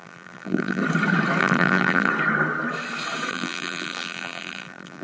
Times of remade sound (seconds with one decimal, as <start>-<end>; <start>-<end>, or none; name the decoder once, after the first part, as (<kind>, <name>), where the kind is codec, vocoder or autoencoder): 0.0-0.8 (vocoder, BigVGAN v2); 1.4-2.1; 3.3-5.0